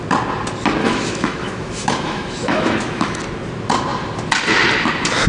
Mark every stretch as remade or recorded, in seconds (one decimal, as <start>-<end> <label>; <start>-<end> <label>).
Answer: 0.0-0.8 recorded; 0.8-3.2 remade; 3.2-5.3 recorded